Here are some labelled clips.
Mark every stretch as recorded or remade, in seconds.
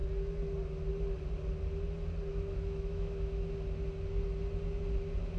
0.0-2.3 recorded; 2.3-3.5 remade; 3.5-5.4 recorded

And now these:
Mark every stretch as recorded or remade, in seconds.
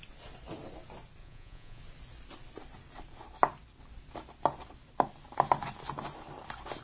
0.0-1.2 recorded; 1.2-1.8 remade; 1.8-6.8 recorded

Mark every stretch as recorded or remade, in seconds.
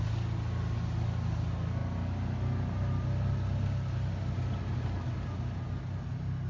0.0-6.5 recorded